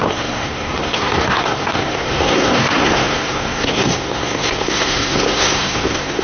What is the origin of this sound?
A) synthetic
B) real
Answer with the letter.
A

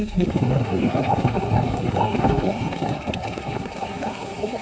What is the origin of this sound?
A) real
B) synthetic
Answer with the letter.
B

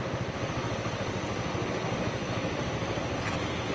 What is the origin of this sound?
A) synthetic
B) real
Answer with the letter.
B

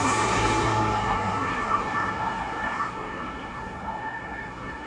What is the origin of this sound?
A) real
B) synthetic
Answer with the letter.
B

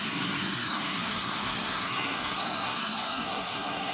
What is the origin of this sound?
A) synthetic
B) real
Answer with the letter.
A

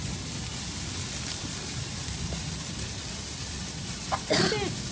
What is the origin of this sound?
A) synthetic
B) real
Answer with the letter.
B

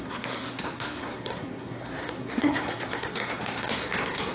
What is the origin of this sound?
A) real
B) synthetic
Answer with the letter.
B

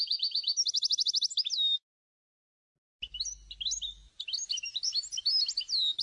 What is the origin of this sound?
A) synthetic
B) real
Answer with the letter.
B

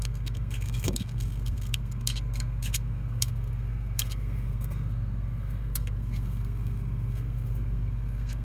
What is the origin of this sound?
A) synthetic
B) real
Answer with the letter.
A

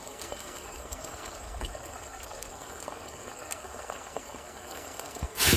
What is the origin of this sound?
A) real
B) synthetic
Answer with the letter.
B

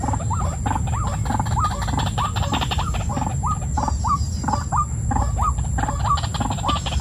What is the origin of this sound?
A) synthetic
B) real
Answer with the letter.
B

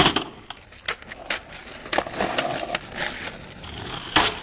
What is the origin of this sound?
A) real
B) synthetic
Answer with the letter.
A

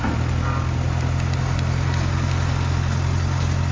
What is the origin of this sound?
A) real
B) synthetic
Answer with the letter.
A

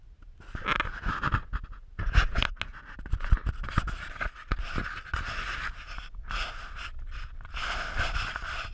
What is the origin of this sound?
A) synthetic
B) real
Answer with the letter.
B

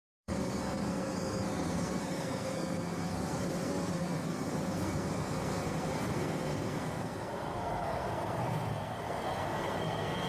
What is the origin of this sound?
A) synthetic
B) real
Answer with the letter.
A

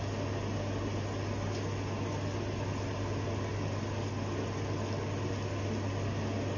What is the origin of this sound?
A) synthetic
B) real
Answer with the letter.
B